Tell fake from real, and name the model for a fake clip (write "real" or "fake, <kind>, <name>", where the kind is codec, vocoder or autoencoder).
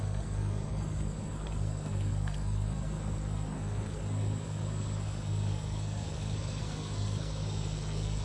fake, codec, SNAC